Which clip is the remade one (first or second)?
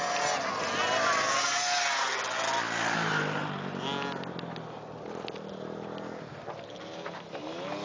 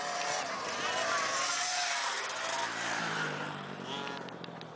second